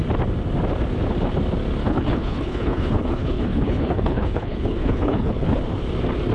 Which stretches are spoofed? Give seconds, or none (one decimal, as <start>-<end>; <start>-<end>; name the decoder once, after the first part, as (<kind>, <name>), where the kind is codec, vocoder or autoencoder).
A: 1.8-5.6 (codec, HILCodec)